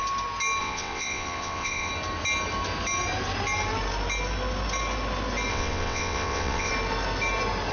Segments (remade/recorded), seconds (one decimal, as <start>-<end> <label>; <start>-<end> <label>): 0.0-0.6 recorded; 0.6-1.9 remade; 1.9-5.5 recorded; 5.5-6.7 remade; 6.7-7.7 recorded

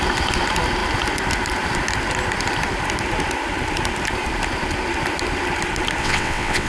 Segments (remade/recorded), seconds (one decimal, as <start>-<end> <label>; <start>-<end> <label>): 0.0-6.0 recorded; 6.0-6.7 remade

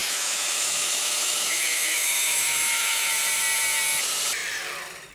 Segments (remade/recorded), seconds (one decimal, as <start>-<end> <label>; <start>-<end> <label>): 0.0-3.1 remade; 3.1-5.1 recorded

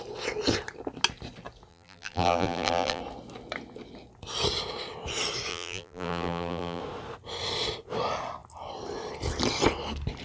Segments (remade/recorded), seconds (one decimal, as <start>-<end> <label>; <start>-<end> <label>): 0.0-1.7 recorded; 1.7-3.0 remade; 3.0-5.5 recorded; 5.5-6.8 remade; 6.8-10.2 recorded

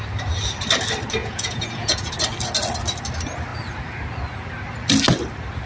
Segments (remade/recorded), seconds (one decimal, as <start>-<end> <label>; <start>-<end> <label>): 0.0-1.2 recorded; 1.2-2.1 remade; 2.1-5.7 recorded

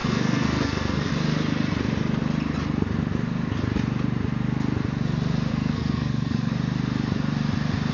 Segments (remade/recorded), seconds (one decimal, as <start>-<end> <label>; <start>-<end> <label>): 0.0-1.1 remade; 1.1-5.5 recorded; 5.5-6.5 remade; 6.5-7.9 recorded

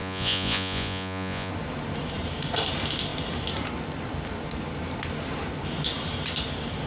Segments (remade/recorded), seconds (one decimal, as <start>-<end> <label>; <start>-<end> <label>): 0.0-1.5 remade; 1.5-6.9 recorded